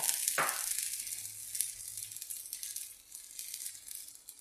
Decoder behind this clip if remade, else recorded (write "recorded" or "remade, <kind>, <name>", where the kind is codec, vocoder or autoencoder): recorded